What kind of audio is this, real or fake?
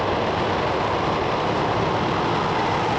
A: real